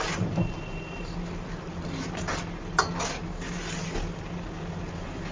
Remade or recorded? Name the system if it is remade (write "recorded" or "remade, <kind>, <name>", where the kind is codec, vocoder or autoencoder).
recorded